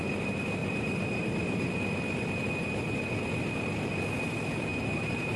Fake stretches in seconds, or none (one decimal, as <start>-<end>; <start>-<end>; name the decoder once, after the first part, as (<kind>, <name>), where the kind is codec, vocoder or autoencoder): 0.6-1.7 (vocoder, BigVGAN v2); 4.7-5.4